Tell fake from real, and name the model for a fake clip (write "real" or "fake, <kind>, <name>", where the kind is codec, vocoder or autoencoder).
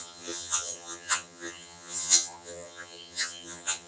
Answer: fake, vocoder, HiFi-GAN